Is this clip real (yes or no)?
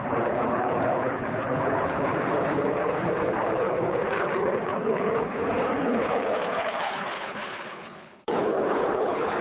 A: no